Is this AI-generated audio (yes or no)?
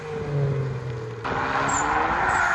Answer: no